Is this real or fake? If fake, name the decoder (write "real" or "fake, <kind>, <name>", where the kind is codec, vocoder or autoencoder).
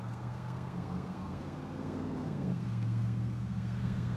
fake, codec, SNAC